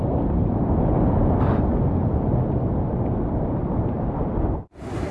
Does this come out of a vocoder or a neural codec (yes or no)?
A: no